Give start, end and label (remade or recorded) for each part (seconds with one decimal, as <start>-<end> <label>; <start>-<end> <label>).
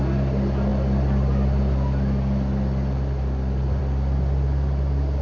0.0-5.2 recorded